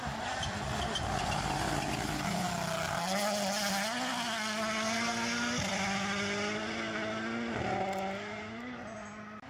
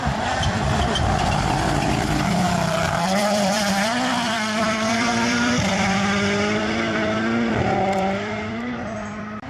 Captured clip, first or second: first